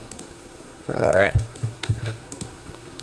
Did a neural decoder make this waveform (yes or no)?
yes